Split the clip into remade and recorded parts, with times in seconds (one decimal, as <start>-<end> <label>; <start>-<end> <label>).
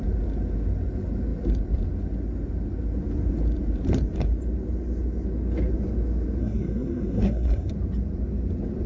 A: 0.0-6.4 recorded; 6.4-7.7 remade; 7.7-8.9 recorded